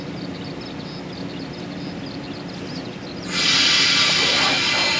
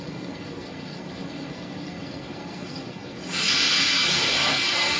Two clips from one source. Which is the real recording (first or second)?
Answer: first